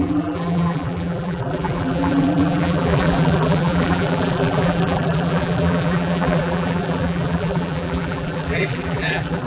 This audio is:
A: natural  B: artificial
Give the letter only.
B